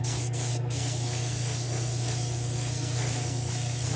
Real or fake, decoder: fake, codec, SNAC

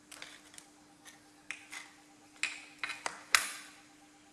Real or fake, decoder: real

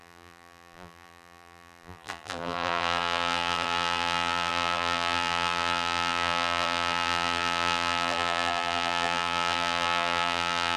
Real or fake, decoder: fake, vocoder, BigVGAN v2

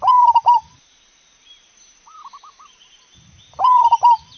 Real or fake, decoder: fake, vocoder, BigVGAN v2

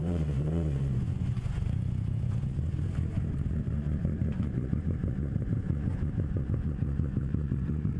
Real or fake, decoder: fake, vocoder, Vocos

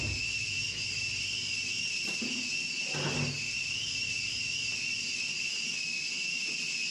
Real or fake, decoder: real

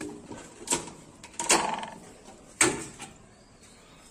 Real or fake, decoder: real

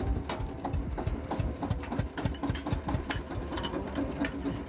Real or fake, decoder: real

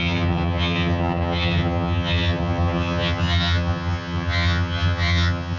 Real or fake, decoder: fake, vocoder, HiFi-GAN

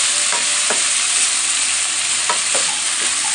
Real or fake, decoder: real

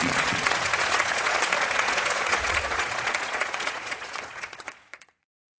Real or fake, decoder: fake, vocoder, Vocos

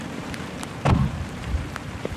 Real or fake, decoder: fake, vocoder, BigVGAN v2